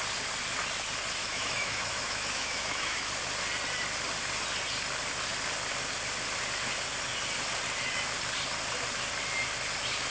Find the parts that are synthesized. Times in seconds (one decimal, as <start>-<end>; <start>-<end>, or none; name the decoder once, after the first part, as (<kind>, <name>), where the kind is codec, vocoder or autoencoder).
1.2-3.1 (autoencoder, DAC-VAE)